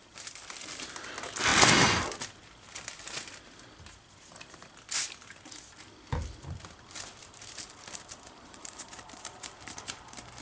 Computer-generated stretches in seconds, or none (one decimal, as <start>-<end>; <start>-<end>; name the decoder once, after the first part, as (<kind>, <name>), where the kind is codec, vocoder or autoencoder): 7.2-10.4 (vocoder, BigVGAN v2)